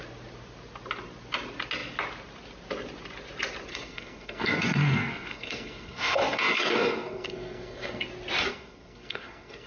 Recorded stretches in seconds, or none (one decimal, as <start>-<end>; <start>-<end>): 0.0-3.7; 8.1-8.5